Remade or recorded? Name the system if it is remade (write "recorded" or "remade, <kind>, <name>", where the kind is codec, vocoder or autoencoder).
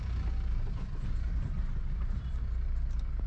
recorded